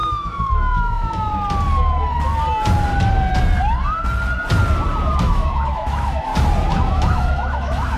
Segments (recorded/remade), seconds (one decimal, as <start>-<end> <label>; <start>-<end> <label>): 0.0-1.3 remade; 1.3-5.2 recorded; 5.2-6.3 remade; 6.3-6.9 recorded; 6.9-8.0 remade